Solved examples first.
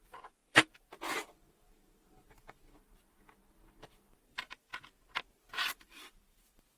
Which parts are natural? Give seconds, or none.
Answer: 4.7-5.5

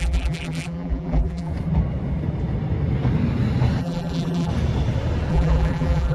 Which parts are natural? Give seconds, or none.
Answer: 1.5-3.8; 4.5-5.3

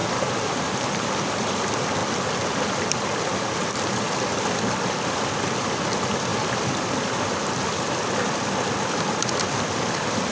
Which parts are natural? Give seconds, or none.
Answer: 0.0-0.5; 2.0-4.7

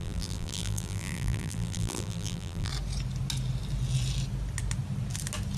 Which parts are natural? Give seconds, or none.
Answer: 2.7-5.6

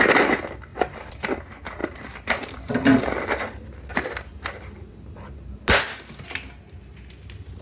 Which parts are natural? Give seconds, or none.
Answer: 0.0-0.7; 1.4-1.8; 3.0-7.6